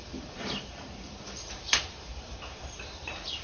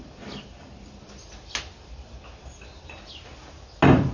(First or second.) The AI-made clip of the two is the first